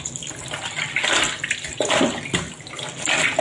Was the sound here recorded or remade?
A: recorded